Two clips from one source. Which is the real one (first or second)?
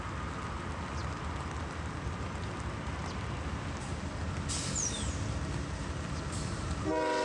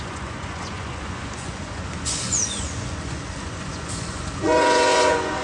first